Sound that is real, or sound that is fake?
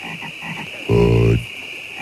real